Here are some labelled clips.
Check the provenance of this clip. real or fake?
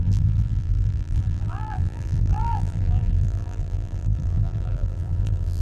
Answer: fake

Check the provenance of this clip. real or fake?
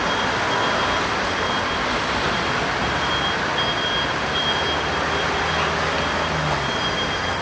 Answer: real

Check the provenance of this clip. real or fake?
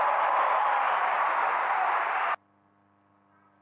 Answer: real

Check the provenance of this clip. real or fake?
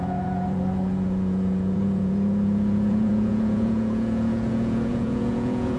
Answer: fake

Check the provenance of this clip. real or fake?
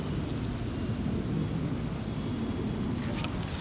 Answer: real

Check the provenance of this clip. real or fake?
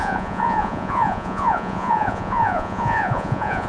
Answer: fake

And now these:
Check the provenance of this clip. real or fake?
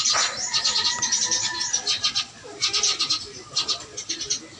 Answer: real